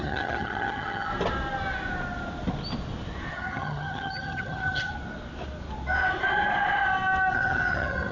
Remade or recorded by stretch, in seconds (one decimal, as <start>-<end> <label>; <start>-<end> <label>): 0.0-1.1 remade; 1.1-3.3 recorded; 3.3-4.9 remade; 4.9-7.3 recorded; 7.3-8.1 remade